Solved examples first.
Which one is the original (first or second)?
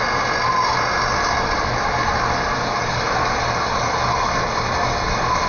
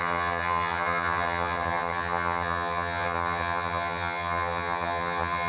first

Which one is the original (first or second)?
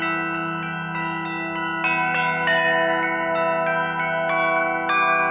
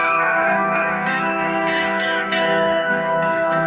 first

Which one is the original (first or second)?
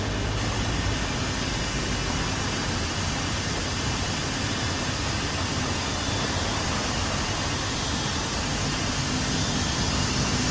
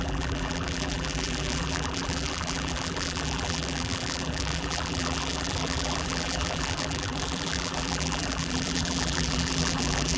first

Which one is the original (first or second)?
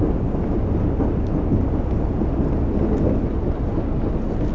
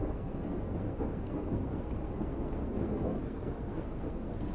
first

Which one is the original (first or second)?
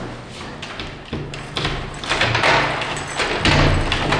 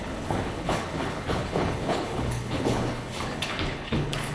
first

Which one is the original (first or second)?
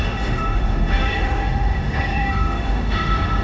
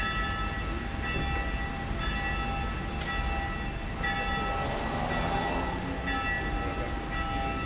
second